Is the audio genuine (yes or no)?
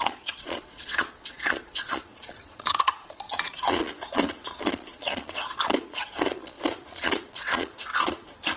no